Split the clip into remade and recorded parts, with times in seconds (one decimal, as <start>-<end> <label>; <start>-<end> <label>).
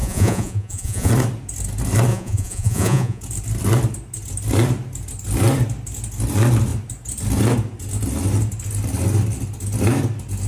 0.0-1.1 remade; 1.1-2.1 recorded; 2.1-3.2 remade; 3.2-10.5 recorded